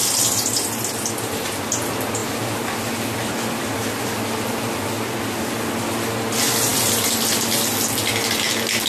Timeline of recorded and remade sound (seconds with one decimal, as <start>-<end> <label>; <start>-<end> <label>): 0.0-8.9 recorded